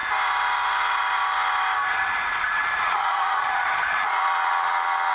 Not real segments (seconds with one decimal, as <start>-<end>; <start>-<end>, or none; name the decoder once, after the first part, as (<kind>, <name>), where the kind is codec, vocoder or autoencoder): 1.9-5.1 (vocoder, Vocos)